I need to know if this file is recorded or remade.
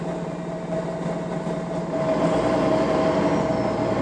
recorded